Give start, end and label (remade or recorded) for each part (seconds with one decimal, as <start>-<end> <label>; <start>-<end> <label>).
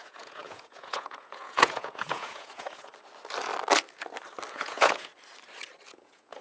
0.0-2.9 remade; 2.9-4.5 recorded; 4.5-5.1 remade; 5.1-5.9 recorded; 5.9-6.4 remade